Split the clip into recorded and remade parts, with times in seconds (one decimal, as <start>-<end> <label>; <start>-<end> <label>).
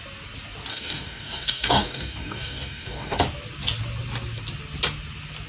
0.0-0.7 recorded; 0.7-3.2 remade; 3.2-5.5 recorded